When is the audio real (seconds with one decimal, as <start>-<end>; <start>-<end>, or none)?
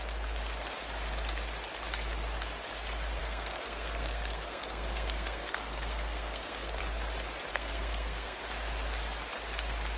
0.0-3.2; 6.8-7.5; 8.4-10.0